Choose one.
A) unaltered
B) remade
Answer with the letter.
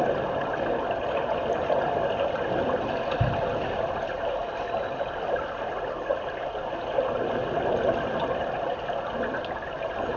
A